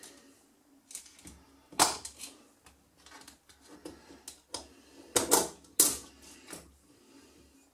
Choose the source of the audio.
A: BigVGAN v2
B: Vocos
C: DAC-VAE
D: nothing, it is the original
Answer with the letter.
D